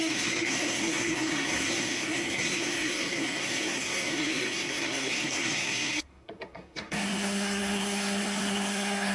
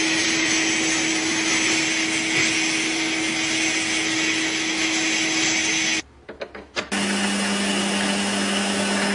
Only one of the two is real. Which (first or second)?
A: second